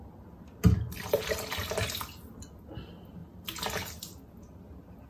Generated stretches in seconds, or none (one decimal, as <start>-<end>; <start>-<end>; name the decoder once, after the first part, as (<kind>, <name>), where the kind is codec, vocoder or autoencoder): none